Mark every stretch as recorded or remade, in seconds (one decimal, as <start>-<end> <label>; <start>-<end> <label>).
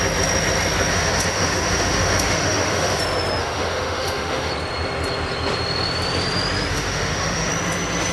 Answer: 0.0-0.9 recorded; 0.9-3.0 remade; 3.0-3.4 recorded; 3.4-4.5 remade; 4.5-6.7 recorded; 6.7-7.5 remade; 7.5-8.1 recorded